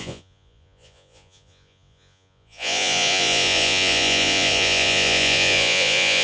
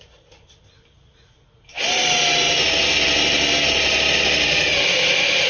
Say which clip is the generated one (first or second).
first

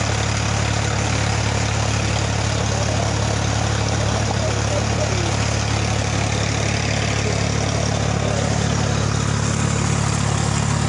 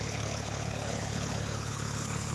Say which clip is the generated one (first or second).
second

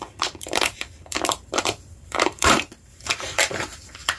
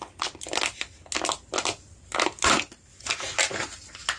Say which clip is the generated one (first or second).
first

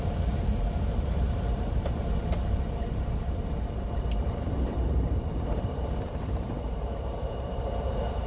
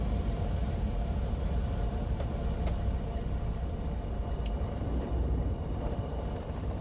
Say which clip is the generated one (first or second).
first